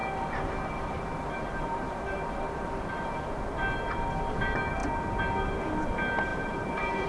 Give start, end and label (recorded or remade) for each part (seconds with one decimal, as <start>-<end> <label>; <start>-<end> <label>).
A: 0.0-3.2 remade; 3.2-6.3 recorded; 6.3-7.1 remade